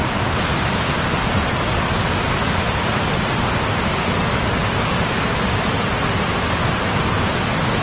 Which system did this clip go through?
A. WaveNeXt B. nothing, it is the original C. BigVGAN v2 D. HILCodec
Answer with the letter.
B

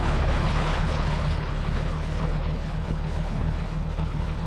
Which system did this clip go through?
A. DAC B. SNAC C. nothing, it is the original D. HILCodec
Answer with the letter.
D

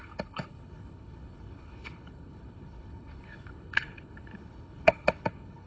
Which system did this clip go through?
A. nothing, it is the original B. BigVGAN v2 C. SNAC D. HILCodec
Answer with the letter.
D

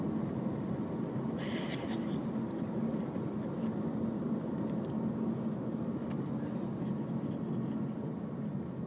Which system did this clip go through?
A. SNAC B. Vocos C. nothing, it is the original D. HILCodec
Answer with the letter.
C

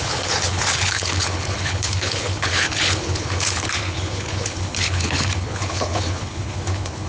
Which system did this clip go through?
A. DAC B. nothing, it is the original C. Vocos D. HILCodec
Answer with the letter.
D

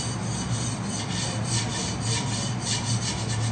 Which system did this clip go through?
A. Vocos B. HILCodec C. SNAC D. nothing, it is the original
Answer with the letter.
D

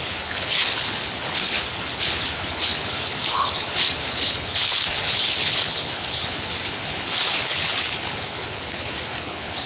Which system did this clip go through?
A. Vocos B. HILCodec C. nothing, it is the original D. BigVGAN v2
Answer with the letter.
B